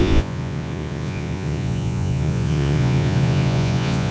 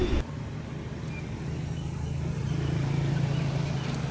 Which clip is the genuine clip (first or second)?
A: second